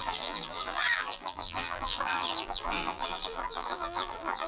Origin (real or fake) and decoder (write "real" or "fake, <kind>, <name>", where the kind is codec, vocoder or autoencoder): fake, vocoder, BigVGAN v2